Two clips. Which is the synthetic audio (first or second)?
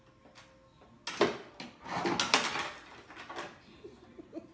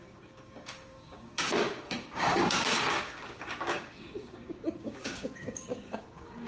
second